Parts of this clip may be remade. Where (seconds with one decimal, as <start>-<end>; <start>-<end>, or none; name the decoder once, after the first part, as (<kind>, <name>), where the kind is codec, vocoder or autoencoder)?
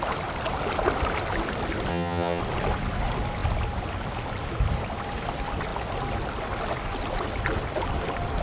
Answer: 1.9-2.4 (vocoder, HiFi-GAN)